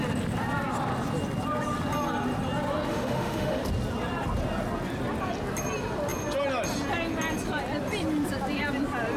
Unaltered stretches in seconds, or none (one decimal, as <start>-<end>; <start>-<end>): 0.0-2.9; 3.6-9.2